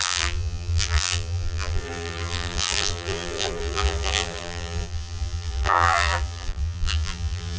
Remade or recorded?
remade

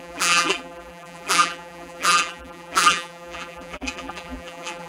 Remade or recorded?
remade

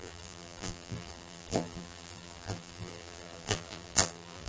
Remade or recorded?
remade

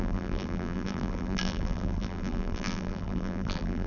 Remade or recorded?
remade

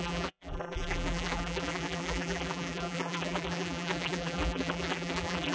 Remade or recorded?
remade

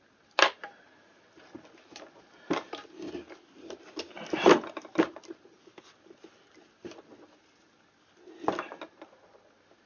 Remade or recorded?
recorded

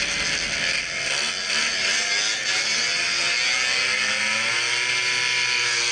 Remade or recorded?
recorded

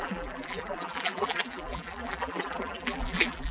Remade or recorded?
remade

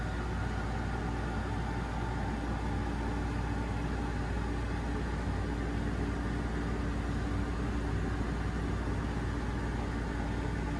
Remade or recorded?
recorded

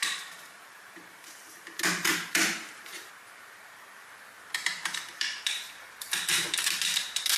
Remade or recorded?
remade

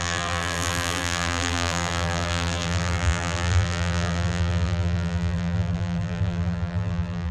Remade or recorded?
remade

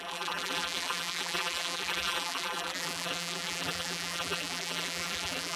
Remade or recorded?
remade